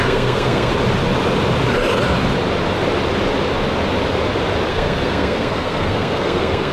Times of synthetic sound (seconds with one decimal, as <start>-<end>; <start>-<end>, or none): 0.0-0.7; 4.7-6.7